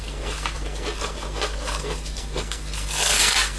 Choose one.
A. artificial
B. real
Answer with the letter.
A